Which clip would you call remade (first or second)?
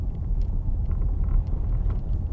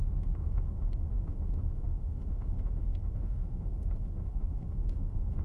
second